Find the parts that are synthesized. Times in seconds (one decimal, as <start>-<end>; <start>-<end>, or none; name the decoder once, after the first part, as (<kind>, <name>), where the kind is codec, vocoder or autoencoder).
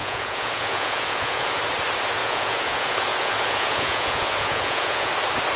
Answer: 0.0-1.6 (vocoder, Vocos); 2.2-5.1